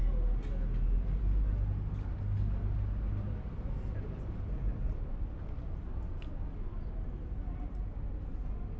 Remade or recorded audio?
recorded